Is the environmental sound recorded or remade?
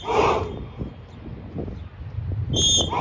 recorded